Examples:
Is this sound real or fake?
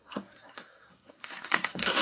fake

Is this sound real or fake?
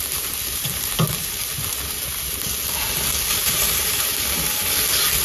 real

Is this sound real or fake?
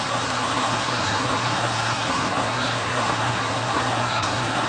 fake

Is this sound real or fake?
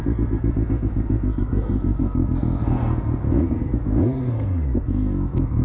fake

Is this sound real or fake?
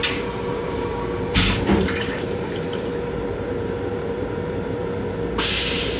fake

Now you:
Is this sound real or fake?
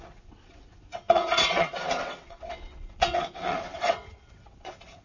fake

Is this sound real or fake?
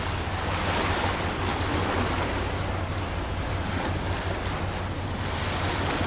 real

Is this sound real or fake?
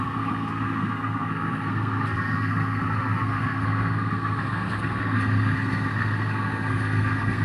fake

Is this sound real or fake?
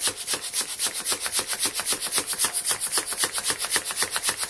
real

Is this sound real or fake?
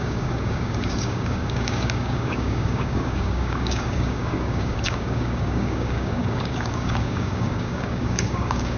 fake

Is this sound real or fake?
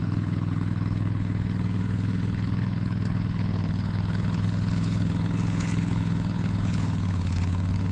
fake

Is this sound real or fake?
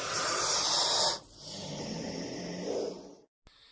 real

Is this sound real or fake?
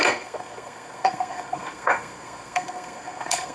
fake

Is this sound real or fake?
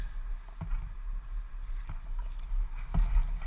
real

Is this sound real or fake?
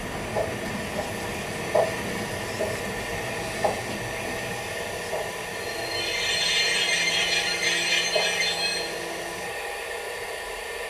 real